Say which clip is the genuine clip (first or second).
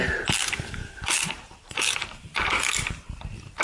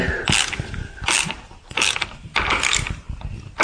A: second